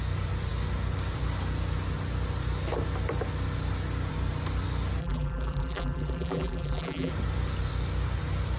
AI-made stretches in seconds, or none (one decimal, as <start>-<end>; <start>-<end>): 5.0-7.1